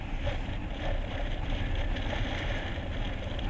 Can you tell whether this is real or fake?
real